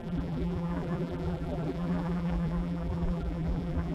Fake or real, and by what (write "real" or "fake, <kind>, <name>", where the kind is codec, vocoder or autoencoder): fake, vocoder, BigVGAN v2